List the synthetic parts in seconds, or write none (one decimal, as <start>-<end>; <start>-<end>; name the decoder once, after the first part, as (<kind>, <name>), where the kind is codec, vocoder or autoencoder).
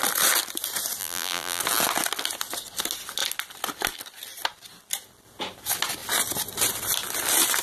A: 1.0-1.6 (vocoder, BigVGAN v2)